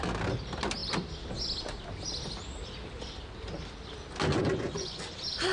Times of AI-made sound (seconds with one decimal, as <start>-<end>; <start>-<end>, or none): 4.3-5.0